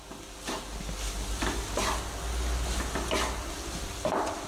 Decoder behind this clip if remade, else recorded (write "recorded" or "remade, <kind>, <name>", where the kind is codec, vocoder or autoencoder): recorded